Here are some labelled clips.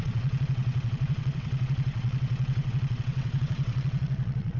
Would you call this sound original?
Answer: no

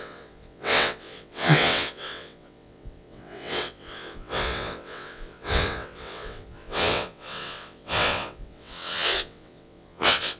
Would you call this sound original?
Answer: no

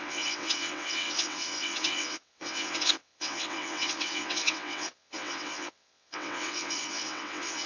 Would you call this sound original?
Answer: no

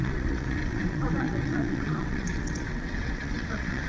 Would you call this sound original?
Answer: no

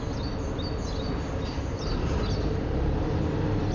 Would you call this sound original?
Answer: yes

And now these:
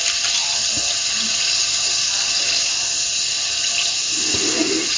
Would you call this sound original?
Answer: yes